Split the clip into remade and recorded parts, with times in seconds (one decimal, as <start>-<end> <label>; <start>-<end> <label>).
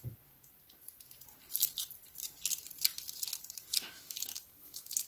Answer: 0.0-3.7 recorded; 3.7-5.1 remade